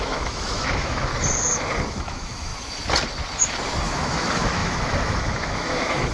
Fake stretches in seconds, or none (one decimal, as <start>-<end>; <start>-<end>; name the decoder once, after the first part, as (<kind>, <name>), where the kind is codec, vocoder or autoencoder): 0.0-1.1 (autoencoder, DAC-VAE); 1.9-2.5; 3.8-6.1